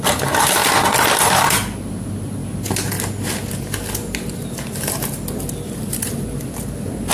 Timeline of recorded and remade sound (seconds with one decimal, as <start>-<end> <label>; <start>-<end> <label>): 0.0-7.1 recorded